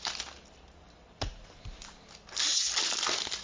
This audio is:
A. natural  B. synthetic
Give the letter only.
A